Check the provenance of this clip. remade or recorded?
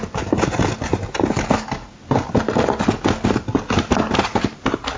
recorded